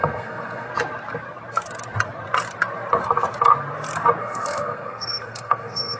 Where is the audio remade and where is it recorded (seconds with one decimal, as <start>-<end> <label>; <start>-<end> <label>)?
0.0-0.7 remade; 0.7-4.2 recorded; 4.2-6.0 remade